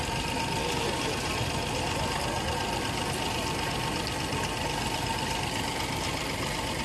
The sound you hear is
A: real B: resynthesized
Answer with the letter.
A